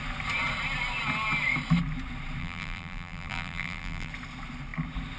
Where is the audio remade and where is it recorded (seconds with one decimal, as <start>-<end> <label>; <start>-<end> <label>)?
0.0-2.4 recorded; 2.4-4.1 remade; 4.1-5.2 recorded